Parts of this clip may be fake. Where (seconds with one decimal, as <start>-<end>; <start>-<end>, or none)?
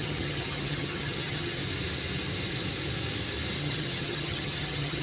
0.0-1.6; 3.6-5.0